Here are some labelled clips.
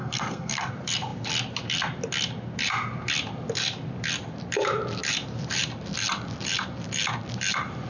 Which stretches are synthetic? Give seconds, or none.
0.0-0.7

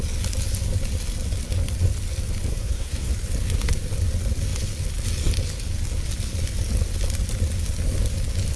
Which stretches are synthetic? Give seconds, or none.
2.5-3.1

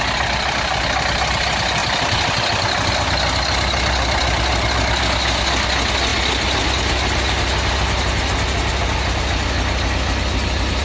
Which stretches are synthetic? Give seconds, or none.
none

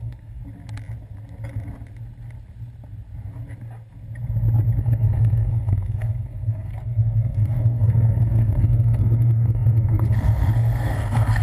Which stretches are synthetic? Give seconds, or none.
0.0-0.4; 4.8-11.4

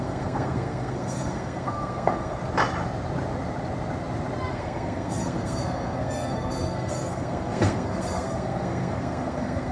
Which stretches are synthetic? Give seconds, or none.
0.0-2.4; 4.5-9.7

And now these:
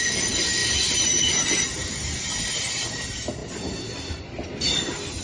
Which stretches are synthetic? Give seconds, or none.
none